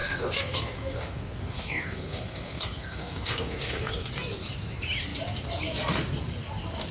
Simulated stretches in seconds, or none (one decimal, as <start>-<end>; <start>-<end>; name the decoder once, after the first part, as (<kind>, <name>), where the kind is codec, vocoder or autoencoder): 0.0-4.1 (codec, SNAC)